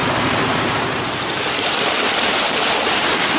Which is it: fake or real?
fake